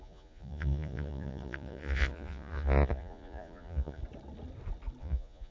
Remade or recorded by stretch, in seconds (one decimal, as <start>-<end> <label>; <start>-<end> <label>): 0.0-4.0 remade; 4.0-5.0 recorded; 5.0-5.5 remade